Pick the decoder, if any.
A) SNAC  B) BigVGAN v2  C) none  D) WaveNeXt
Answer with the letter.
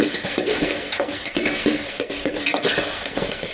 A